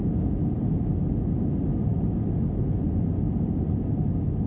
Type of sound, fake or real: real